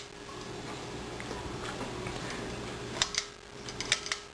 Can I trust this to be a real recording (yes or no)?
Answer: yes